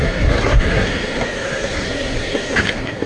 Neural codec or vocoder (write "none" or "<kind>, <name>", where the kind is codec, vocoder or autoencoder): codec, SNAC